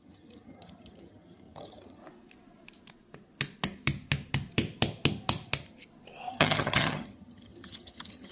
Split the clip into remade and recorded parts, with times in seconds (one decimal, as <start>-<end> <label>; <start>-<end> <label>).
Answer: 0.0-2.0 remade; 2.0-6.3 recorded; 6.3-8.3 remade